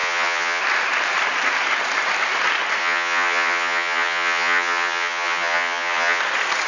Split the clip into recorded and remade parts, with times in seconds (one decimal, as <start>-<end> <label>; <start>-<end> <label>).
0.0-0.6 remade; 0.6-2.8 recorded; 2.8-6.2 remade; 6.2-6.7 recorded

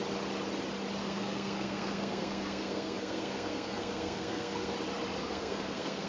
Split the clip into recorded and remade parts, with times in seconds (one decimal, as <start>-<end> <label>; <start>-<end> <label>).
0.0-1.0 recorded; 1.0-4.7 remade; 4.7-5.2 recorded; 5.2-6.1 remade

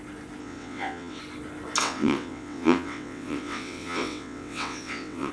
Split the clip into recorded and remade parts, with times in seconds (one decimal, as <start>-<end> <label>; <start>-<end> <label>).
0.0-0.4 recorded; 0.4-1.2 remade; 1.2-1.8 recorded; 1.8-5.3 remade